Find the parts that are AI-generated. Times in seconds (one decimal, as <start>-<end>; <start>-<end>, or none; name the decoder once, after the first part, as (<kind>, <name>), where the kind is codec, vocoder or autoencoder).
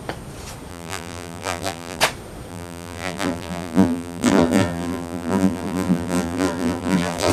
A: 0.7-2.0 (vocoder, BigVGAN v2); 2.5-7.3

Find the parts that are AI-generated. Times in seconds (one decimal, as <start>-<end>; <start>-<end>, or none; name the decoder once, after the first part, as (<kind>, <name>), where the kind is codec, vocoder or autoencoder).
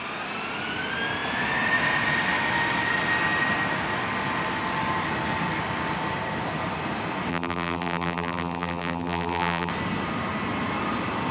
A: 7.3-9.7 (vocoder, BigVGAN v2)